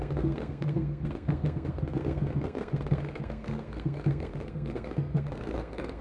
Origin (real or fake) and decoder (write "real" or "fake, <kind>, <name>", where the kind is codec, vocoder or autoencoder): fake, codec, SNAC